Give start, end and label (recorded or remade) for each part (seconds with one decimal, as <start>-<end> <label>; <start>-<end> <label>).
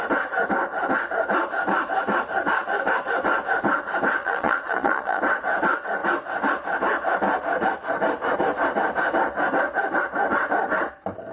0.0-4.2 recorded; 4.2-5.2 remade; 5.2-11.3 recorded